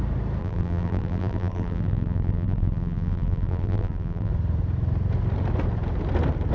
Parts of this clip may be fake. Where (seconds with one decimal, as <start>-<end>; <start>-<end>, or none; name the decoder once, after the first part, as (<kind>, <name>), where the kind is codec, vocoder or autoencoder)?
0.4-4.3 (vocoder, BigVGAN v2)